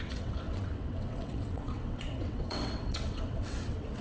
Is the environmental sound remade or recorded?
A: remade